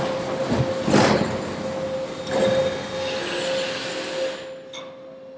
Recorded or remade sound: recorded